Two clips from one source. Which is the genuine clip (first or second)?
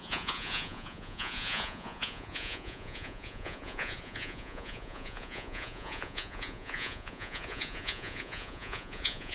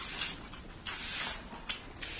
second